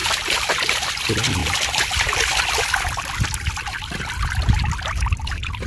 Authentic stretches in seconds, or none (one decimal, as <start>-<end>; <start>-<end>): 0.9-5.7